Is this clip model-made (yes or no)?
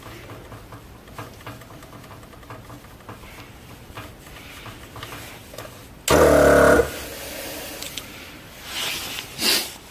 no